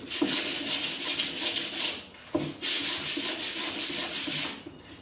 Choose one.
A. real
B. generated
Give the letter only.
A